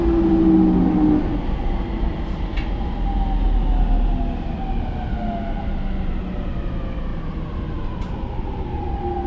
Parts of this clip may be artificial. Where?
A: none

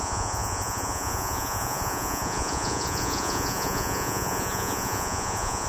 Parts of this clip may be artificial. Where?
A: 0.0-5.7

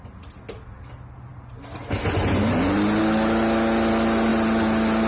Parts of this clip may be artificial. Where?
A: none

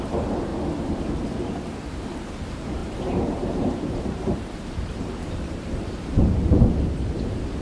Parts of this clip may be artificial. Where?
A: 0.0-0.5; 2.2-7.6